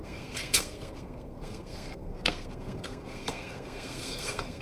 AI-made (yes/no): yes